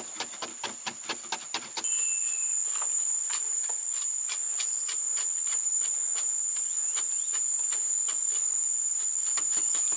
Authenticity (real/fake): real